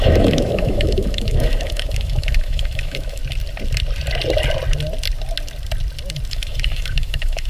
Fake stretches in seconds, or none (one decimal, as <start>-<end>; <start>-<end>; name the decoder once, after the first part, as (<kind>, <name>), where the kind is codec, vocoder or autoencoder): 0.0-3.2 (autoencoder, DAC-VAE); 6.3-7.5

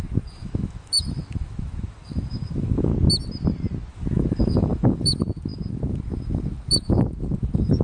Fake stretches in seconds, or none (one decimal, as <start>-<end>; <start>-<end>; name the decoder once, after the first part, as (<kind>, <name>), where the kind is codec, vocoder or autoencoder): 0.0-2.9 (autoencoder, DAC-VAE); 3.9-7.8

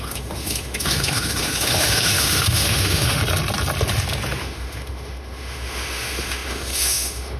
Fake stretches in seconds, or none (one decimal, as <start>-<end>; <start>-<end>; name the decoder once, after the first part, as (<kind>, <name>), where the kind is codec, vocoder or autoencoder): 0.0-3.2 (autoencoder, DAC-VAE); 4.4-7.4

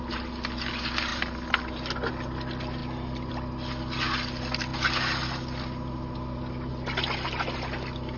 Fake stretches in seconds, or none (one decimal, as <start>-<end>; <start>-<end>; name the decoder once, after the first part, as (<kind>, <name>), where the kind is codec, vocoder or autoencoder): none

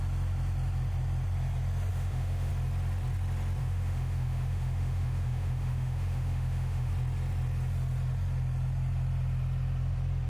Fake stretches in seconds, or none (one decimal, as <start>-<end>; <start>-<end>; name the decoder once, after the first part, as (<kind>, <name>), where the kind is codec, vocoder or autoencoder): 1.9-2.5 (autoencoder, DAC-VAE); 3.6-6.9

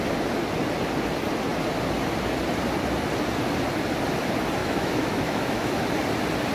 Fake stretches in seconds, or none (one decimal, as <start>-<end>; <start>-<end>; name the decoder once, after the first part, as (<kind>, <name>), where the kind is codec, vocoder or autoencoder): 4.6-5.7 (autoencoder, DAC-VAE)

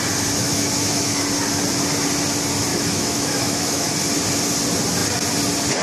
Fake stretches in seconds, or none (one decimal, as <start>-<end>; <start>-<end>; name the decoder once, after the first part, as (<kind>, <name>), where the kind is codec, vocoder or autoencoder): 0.4-1.2 (autoencoder, DAC-VAE); 2.7-3.9

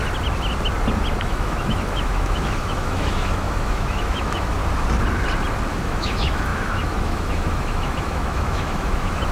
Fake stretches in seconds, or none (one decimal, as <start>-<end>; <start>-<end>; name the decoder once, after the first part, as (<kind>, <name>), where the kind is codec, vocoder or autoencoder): 1.2-4.6 (autoencoder, DAC-VAE); 5.7-9.3